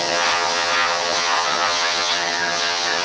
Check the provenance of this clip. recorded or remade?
remade